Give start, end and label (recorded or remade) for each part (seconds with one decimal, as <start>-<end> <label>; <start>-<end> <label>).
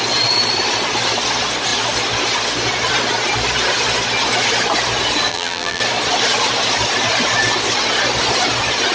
0.0-5.3 recorded; 5.3-5.8 remade; 5.8-8.9 recorded